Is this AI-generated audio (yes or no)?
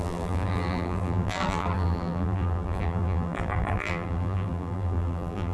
yes